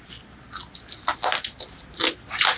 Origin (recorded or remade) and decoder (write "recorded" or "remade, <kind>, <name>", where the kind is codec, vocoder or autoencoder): recorded